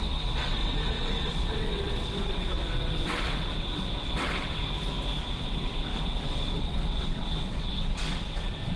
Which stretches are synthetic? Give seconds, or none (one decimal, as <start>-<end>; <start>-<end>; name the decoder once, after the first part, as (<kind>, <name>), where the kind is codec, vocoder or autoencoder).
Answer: 0.0-4.6 (vocoder, WaveNeXt); 5.2-8.8